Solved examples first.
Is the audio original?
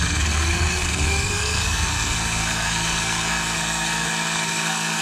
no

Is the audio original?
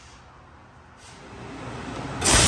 yes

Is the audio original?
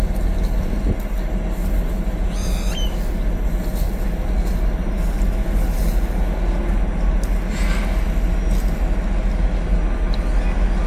yes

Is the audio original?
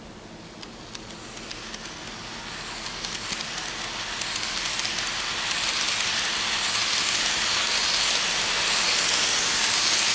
yes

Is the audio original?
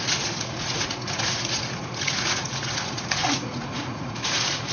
no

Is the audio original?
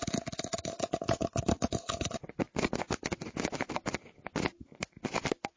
yes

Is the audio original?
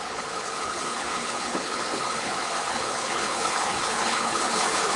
no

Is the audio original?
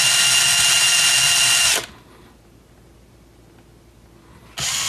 yes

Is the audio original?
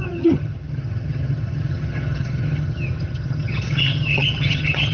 no